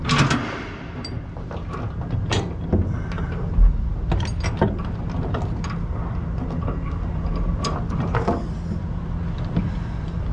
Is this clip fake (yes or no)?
no